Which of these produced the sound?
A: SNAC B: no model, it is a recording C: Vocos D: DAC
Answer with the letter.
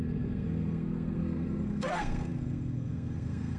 A